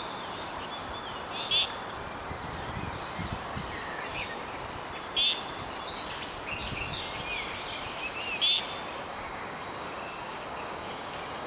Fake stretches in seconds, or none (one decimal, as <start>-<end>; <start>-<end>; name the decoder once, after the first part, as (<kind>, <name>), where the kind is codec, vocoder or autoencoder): 9.1-11.5 (codec, DAC)